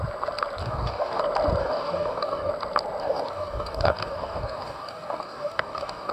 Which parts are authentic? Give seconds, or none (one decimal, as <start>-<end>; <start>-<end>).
0.0-0.6; 1.2-1.6; 2.5-3.0